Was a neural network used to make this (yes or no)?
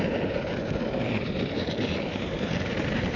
yes